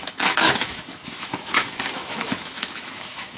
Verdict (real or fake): fake